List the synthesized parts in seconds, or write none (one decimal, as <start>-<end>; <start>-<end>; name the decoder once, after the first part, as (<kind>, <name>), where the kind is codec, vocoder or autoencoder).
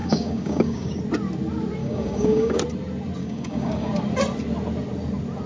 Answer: 0.0-1.0 (codec, DAC); 1.8-2.6; 3.2-3.9